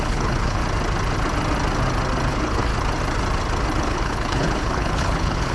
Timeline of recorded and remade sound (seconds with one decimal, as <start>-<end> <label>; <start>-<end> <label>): 0.0-0.6 remade; 0.6-2.3 recorded; 2.3-2.7 remade; 2.7-3.8 recorded; 3.8-5.5 remade